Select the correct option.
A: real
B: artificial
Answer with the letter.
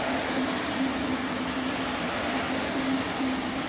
A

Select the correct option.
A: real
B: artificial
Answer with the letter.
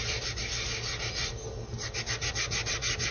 A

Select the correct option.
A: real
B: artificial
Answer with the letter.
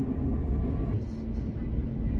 A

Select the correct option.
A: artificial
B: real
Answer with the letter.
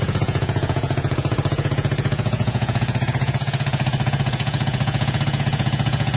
A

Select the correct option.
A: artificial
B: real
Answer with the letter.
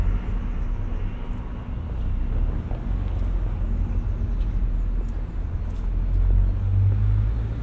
B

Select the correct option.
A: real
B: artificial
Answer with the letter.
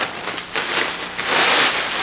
A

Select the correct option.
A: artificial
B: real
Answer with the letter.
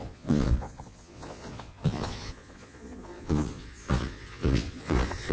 A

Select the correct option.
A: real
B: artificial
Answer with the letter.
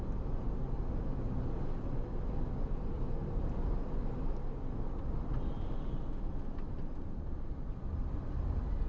A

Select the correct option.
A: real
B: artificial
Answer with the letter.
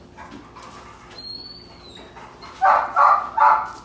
A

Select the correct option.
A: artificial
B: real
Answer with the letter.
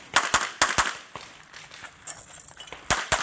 B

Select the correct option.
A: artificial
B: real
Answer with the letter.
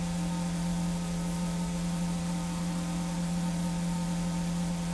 A